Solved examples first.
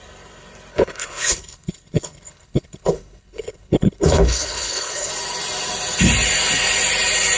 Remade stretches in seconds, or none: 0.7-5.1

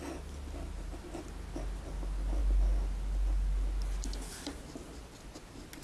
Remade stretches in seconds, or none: none

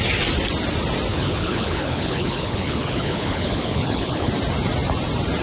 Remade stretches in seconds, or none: 1.1-4.3

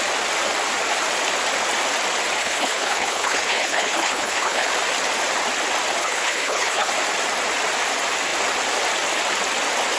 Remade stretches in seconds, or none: 2.4-4.7; 6.0-6.9

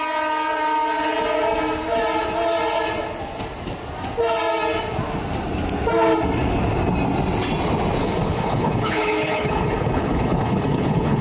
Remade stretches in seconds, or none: 8.0-11.2